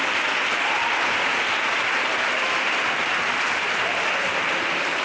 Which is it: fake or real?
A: real